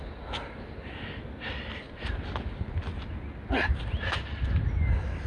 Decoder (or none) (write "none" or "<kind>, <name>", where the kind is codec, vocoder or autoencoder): none